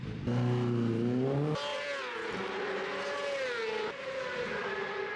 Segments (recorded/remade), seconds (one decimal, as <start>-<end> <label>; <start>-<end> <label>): 0.0-5.2 recorded